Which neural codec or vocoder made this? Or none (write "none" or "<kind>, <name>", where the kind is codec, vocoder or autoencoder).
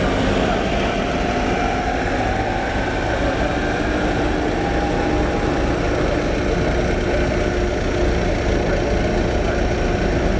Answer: none